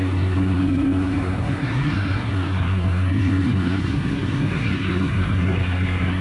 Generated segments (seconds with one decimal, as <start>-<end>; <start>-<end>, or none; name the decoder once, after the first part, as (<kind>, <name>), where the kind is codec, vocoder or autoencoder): 0.0-6.2 (codec, SNAC)